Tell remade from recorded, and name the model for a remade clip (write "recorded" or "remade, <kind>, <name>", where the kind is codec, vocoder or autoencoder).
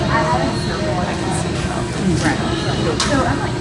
recorded